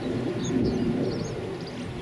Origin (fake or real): real